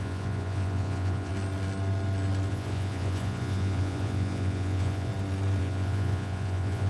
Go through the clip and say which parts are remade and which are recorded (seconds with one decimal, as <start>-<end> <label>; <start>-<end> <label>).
0.0-1.3 remade; 1.3-2.5 recorded; 2.5-5.1 remade; 5.1-5.6 recorded; 5.6-6.9 remade